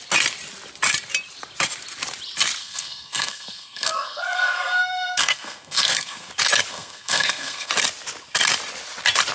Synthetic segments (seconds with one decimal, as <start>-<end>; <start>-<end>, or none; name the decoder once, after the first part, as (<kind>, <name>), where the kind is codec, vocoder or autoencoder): 2.6-6.3 (codec, SNAC); 6.7-7.7